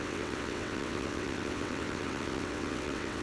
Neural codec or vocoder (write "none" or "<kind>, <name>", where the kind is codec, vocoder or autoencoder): vocoder, WaveNeXt